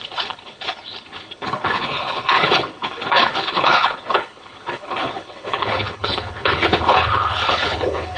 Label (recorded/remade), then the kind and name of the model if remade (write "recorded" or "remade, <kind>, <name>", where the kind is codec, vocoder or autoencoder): remade, codec, HILCodec